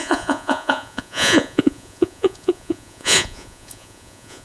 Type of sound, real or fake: fake